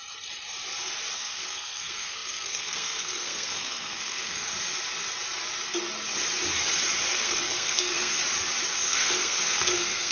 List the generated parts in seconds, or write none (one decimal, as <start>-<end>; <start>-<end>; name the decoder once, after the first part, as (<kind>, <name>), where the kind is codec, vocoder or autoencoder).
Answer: 1.2-4.5 (codec, SNAC); 7.1-8.1; 8.8-10.1